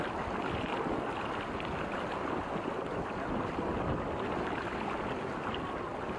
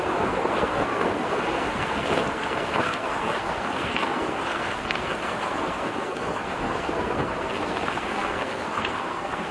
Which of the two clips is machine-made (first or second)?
second